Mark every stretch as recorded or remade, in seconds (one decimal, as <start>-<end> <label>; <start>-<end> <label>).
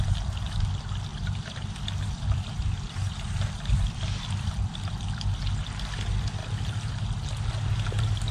0.0-1.1 recorded; 1.1-5.4 remade; 5.4-8.3 recorded